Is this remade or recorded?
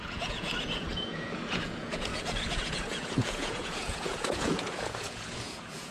remade